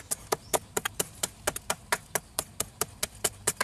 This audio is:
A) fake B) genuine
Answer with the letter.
B